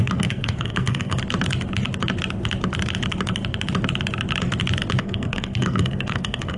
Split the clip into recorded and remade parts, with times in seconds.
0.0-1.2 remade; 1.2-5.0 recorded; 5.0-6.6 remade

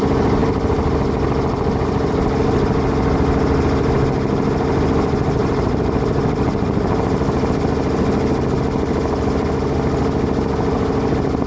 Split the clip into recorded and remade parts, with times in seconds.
0.0-5.4 recorded; 5.4-7.5 remade; 7.5-11.5 recorded